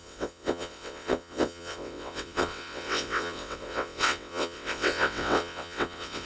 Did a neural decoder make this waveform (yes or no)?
yes